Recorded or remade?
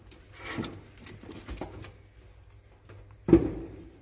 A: recorded